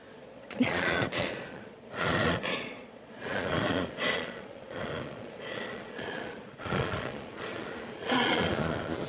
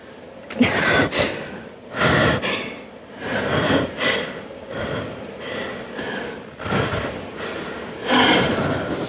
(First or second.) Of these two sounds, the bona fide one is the second